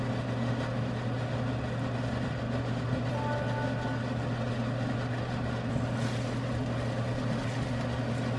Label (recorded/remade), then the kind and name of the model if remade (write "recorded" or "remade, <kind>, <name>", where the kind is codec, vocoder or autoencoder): recorded